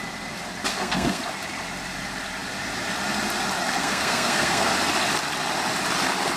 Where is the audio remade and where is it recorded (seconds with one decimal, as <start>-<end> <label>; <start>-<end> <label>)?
0.0-0.7 recorded; 0.7-1.2 remade; 1.2-3.8 recorded; 3.8-4.7 remade; 4.7-6.4 recorded

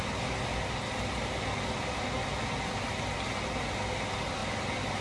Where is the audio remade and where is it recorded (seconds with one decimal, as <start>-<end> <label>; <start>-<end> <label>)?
0.0-5.0 recorded

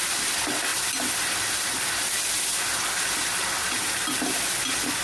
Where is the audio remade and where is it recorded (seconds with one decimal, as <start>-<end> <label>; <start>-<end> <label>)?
0.0-3.6 recorded; 3.6-4.2 remade; 4.2-5.0 recorded

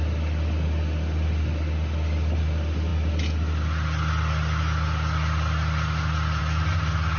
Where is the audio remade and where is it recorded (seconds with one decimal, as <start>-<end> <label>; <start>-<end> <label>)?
0.0-7.2 recorded

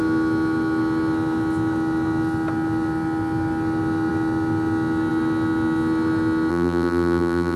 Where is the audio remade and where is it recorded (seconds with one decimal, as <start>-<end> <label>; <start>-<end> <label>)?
0.0-6.5 recorded; 6.5-7.6 remade

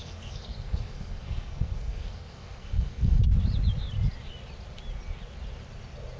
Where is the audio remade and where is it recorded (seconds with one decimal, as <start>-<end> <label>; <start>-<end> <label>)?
0.0-3.2 remade; 3.2-6.2 recorded

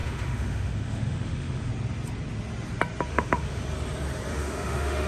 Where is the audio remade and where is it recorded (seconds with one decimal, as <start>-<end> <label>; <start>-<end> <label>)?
0.0-1.7 remade; 1.7-3.1 recorded; 3.1-3.6 remade; 3.6-4.3 recorded; 4.3-5.1 remade

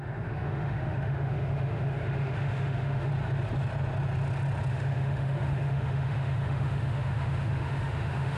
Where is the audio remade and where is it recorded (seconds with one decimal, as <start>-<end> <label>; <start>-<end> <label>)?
0.0-3.1 remade; 3.1-4.7 recorded; 4.7-8.4 remade